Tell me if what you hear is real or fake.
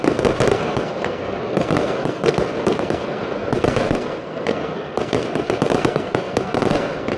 fake